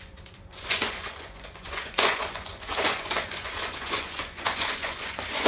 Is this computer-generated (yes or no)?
yes